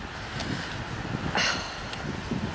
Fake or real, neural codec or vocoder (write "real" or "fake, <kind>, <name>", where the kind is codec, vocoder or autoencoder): real